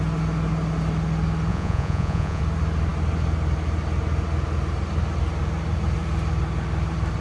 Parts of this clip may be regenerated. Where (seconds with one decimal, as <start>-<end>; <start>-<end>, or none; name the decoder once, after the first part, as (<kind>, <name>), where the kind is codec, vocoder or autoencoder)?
1.5-2.4 (vocoder, Vocos)